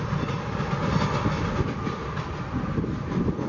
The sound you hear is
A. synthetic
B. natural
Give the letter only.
B